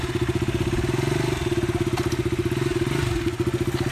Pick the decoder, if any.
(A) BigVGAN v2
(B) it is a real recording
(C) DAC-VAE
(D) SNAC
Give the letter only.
B